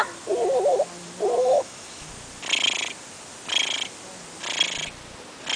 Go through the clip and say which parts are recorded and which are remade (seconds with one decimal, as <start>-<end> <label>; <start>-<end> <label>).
0.0-1.4 recorded; 1.4-2.1 remade; 2.1-5.6 recorded